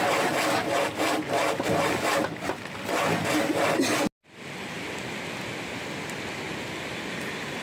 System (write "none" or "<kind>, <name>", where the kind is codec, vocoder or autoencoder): none